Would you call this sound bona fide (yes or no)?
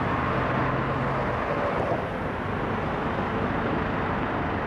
yes